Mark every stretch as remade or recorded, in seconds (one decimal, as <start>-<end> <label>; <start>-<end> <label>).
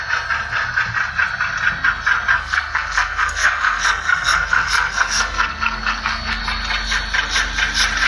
0.0-2.3 recorded; 2.3-6.4 remade; 6.4-8.1 recorded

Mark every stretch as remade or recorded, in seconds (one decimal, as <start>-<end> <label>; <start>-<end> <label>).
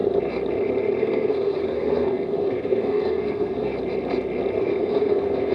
0.0-1.0 recorded; 1.0-3.7 remade; 3.7-4.6 recorded; 4.6-5.5 remade